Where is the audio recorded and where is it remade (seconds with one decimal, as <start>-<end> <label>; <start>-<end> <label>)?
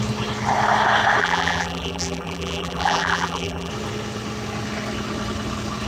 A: 0.0-1.2 recorded; 1.2-3.7 remade; 3.7-5.9 recorded